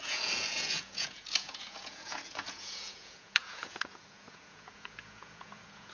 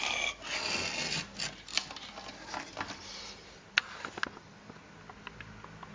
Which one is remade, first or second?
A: first